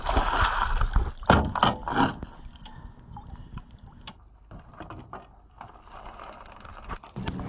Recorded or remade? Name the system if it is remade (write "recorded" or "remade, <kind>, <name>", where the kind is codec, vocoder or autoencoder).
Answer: recorded